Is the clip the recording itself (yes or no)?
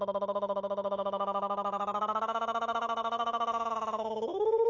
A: yes